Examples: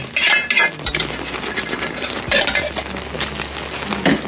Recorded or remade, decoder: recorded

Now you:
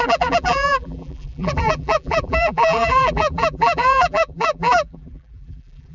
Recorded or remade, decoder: remade, vocoder, BigVGAN v2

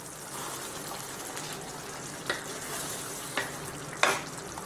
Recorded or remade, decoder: recorded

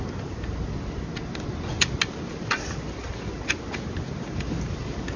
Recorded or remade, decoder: recorded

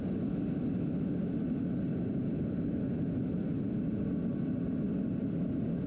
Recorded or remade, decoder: recorded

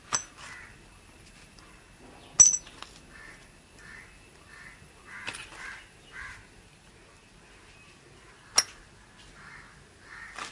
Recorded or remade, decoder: recorded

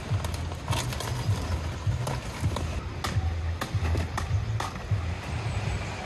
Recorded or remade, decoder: recorded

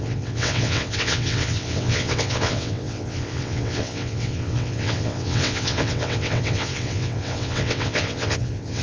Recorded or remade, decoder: remade, vocoder, WaveNeXt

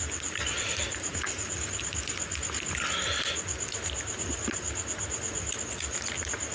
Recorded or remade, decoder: recorded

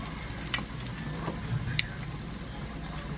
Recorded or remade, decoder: recorded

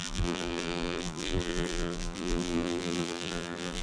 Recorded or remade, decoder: remade, vocoder, BigVGAN v2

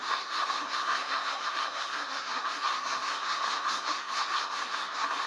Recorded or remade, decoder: remade, codec, SNAC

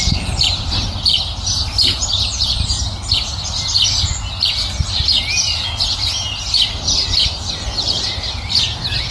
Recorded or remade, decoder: recorded